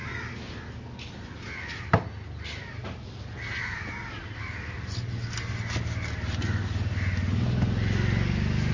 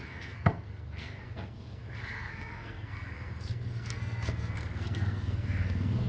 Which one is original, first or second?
first